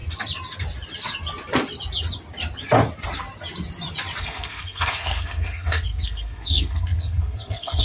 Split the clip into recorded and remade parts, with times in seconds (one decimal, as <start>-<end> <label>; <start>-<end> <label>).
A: 0.0-4.2 recorded; 4.2-7.8 remade